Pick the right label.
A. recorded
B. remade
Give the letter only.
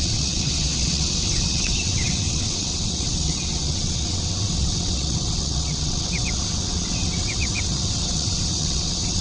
B